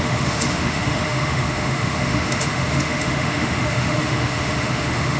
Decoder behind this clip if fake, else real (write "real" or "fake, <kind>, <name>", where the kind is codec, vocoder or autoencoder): fake, autoencoder, DAC-VAE